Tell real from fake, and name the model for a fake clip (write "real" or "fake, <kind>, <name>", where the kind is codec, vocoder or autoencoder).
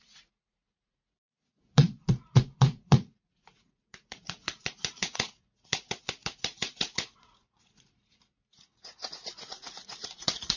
fake, vocoder, Vocos